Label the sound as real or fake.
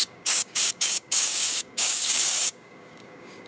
fake